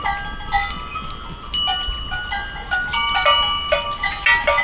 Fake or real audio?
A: real